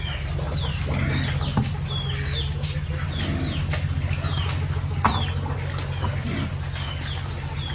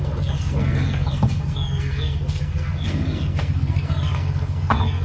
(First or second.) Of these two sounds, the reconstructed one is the second